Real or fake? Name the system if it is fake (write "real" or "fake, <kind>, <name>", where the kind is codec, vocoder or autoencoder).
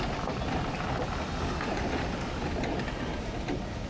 real